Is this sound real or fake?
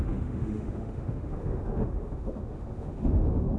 fake